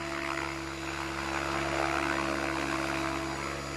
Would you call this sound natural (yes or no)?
yes